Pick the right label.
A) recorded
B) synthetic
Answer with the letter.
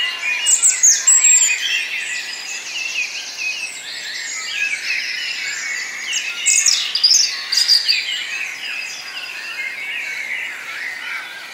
A